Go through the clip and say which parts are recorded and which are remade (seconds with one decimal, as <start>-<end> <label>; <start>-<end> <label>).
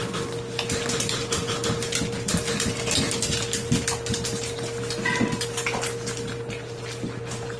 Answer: 0.0-7.6 recorded